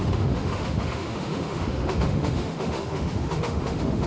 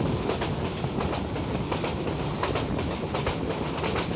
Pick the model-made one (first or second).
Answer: first